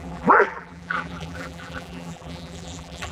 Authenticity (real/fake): fake